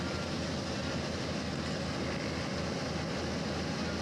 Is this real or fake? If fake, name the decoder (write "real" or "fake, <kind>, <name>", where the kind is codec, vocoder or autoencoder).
real